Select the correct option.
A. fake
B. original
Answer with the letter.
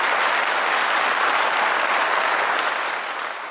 A